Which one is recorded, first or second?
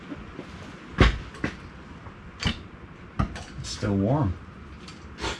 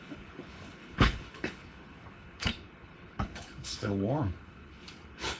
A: first